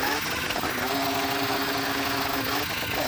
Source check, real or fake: fake